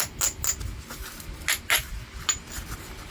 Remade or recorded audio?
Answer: recorded